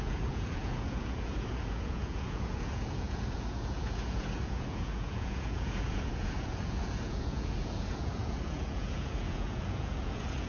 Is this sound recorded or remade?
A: remade